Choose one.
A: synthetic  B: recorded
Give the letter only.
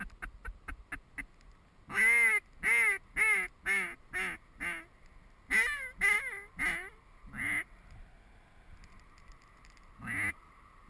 B